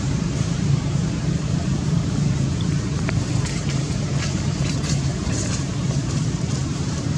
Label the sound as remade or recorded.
remade